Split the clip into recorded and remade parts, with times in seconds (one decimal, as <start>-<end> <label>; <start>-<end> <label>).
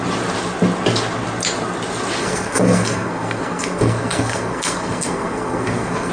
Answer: 0.0-2.2 recorded; 2.2-6.1 remade